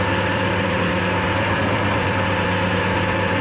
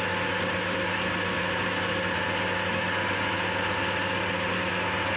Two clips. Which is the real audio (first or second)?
second